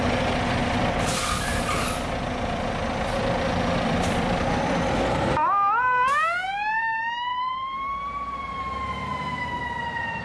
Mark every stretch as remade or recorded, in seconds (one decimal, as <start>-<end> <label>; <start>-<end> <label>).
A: 0.0-0.6 recorded; 0.6-4.8 remade; 4.8-7.3 recorded; 7.3-8.5 remade; 8.5-10.2 recorded